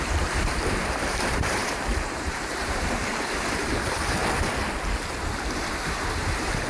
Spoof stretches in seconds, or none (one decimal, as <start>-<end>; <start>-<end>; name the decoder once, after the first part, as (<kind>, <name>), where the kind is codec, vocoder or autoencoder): 0.0-4.2 (vocoder, BigVGAN v2); 5.7-6.7